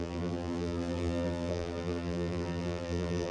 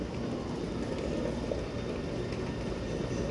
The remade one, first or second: first